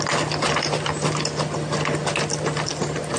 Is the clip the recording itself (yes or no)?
yes